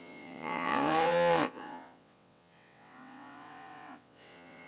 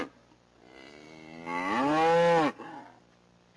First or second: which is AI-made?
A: first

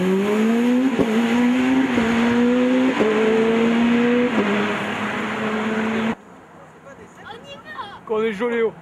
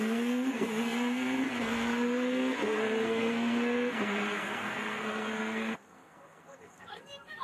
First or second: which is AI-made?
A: second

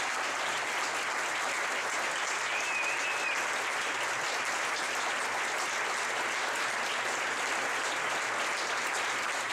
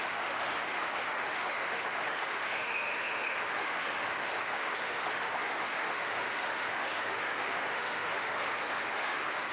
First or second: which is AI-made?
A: second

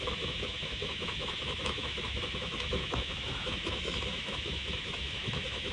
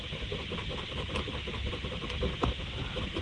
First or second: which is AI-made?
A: first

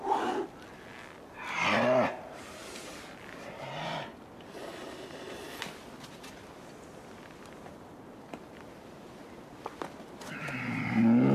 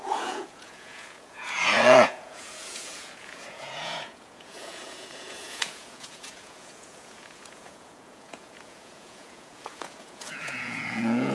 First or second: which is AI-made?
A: second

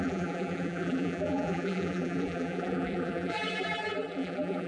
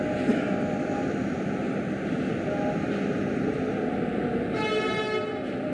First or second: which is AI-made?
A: first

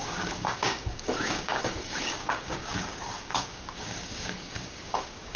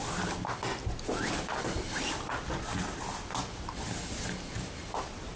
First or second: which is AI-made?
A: first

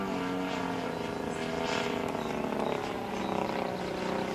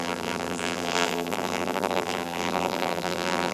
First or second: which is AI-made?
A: second